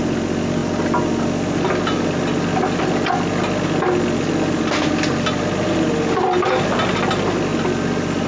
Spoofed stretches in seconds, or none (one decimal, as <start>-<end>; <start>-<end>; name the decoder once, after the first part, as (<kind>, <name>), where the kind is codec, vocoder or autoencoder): none